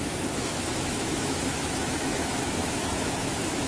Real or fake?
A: fake